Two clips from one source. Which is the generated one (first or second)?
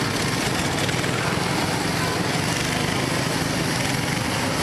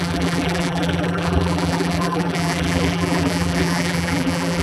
second